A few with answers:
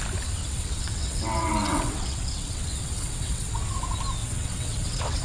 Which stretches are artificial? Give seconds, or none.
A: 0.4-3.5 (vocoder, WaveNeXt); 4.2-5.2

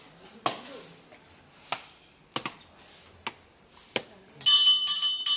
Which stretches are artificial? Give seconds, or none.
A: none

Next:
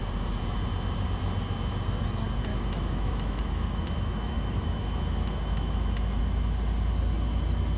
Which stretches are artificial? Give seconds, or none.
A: 2.5-6.2 (autoencoder, DAC-VAE)

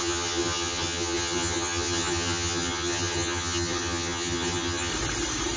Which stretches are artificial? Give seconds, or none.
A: 0.0-4.9 (vocoder, HiFi-GAN)

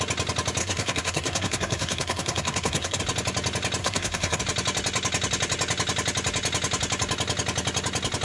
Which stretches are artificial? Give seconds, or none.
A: 0.6-3.0 (codec, SNAC); 3.8-4.4

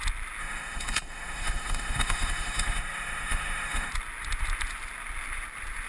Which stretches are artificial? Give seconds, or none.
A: 0.4-3.9 (autoencoder, DAC-VAE)